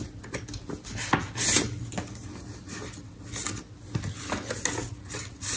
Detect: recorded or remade recorded